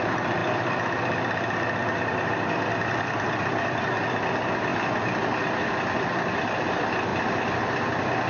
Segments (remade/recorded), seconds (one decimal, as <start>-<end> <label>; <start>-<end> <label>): 0.0-8.3 recorded

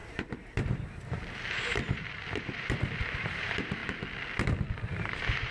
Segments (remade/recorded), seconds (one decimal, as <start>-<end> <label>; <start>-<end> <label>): 0.0-3.8 remade; 3.8-4.7 recorded; 4.7-5.5 remade

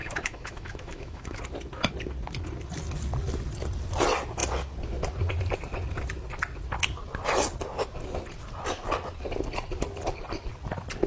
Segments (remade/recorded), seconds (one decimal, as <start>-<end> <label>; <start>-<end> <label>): 0.0-1.4 remade; 1.4-11.1 recorded

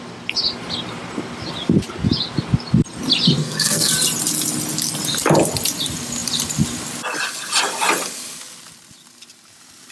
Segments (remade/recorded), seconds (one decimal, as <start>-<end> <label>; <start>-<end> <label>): 0.0-3.4 recorded; 3.4-3.9 remade; 3.9-9.9 recorded

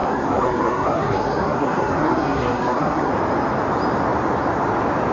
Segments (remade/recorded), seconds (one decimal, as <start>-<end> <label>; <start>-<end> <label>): 0.0-3.1 remade; 3.1-5.1 recorded

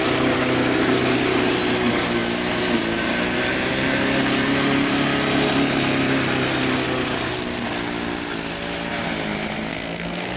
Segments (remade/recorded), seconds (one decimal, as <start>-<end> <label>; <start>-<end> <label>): 0.0-9.7 recorded; 9.7-10.4 remade